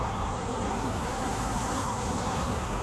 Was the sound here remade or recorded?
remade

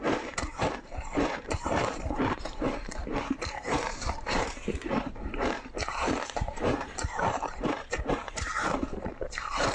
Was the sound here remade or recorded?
remade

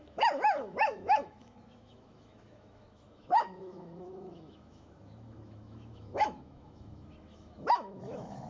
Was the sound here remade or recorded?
remade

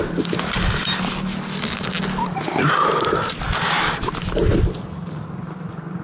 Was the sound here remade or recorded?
recorded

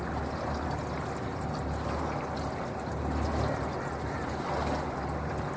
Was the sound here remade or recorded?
recorded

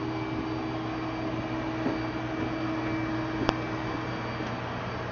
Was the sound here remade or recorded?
recorded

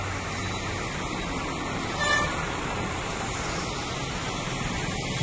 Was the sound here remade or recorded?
recorded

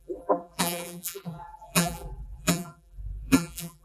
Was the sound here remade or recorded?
remade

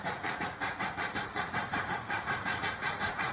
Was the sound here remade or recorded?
remade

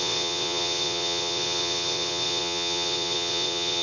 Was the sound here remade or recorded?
remade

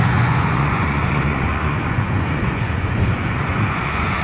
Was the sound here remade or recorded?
remade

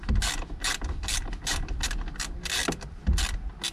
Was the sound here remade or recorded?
recorded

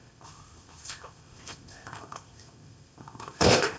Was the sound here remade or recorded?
remade